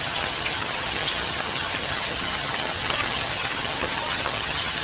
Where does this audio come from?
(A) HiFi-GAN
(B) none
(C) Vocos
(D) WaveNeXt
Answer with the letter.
A